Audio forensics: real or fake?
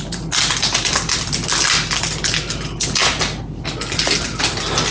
real